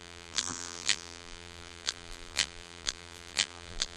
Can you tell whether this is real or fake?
fake